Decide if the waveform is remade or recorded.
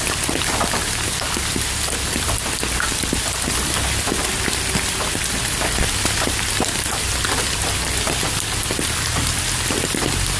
recorded